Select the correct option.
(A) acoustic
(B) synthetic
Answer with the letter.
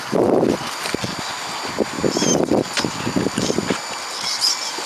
A